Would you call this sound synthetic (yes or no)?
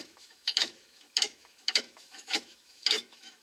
yes